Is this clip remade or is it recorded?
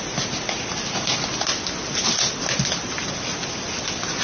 recorded